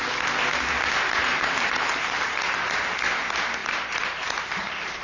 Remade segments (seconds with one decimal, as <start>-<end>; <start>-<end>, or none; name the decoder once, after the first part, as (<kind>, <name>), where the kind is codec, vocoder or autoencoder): 1.2-2.8 (vocoder, BigVGAN v2); 3.6-5.0